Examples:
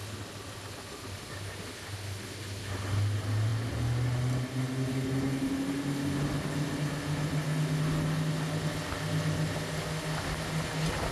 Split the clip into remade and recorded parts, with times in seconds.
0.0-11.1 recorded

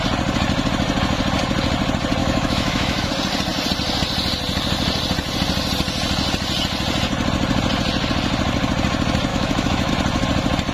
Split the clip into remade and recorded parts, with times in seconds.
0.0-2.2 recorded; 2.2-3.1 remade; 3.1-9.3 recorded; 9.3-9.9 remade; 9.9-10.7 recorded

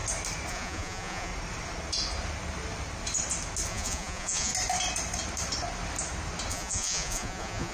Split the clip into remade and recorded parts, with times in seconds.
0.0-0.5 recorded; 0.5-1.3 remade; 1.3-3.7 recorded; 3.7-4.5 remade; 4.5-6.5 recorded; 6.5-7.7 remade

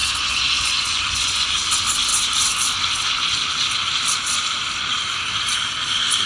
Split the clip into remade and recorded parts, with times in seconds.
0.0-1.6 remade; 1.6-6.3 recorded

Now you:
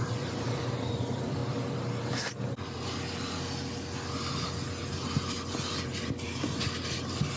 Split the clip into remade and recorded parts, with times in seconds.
0.0-1.4 remade; 1.4-5.8 recorded; 5.8-7.4 remade

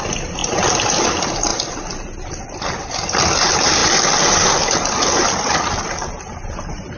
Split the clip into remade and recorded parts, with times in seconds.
0.0-7.0 recorded